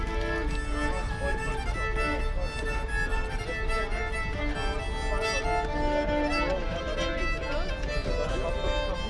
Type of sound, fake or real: real